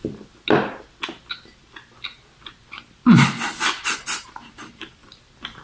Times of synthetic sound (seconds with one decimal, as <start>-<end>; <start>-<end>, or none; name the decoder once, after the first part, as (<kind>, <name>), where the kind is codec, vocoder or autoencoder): none